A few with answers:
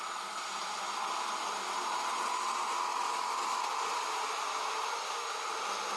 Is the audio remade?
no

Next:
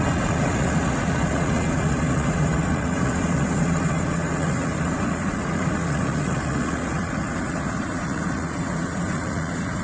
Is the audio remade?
yes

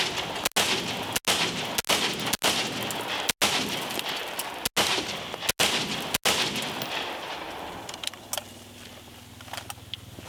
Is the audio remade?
no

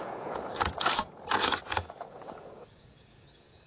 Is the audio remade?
yes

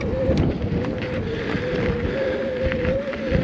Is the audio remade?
no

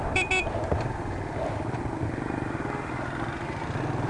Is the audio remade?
no